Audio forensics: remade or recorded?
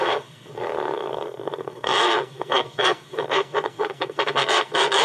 remade